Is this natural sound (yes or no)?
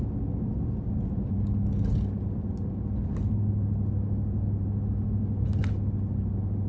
yes